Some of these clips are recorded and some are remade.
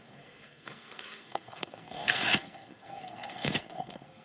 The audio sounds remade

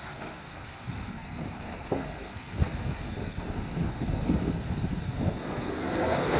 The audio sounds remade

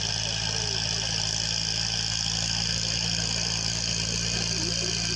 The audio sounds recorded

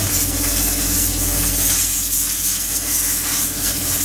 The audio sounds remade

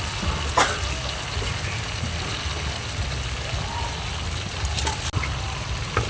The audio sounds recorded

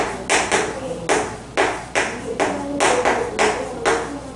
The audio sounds recorded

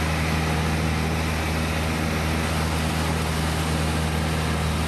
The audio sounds recorded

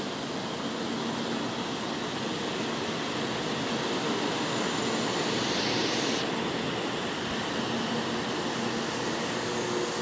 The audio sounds recorded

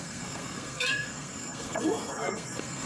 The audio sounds remade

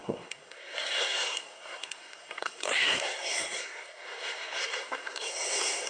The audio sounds remade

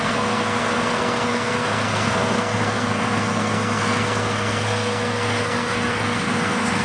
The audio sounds remade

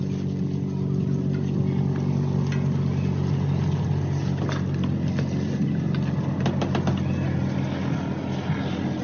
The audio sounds recorded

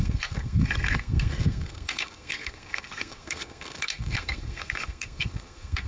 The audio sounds remade